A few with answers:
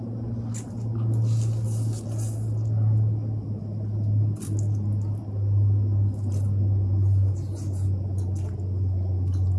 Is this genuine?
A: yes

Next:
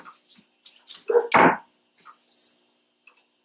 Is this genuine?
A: yes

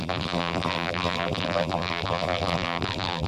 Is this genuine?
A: no